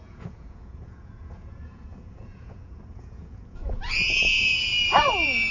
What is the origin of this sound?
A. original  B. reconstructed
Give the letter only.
B